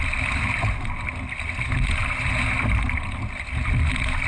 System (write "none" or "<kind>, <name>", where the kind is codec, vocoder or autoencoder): none